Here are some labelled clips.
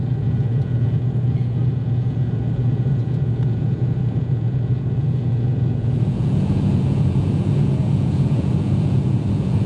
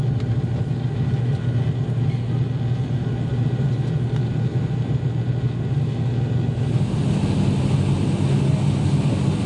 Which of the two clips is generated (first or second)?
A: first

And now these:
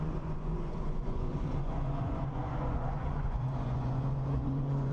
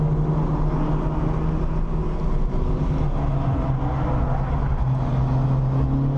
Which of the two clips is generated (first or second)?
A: first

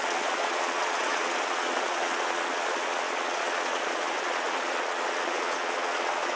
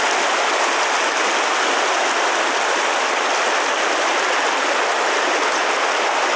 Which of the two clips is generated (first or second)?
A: first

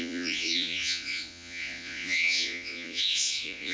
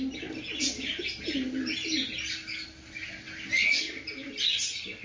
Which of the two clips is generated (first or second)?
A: first